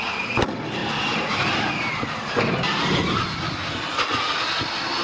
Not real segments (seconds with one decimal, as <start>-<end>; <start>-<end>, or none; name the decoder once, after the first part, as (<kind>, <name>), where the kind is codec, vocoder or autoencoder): none